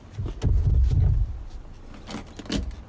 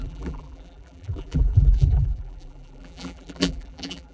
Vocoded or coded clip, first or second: second